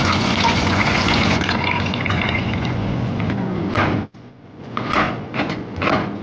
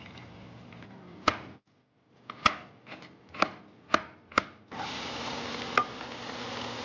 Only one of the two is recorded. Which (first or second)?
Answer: second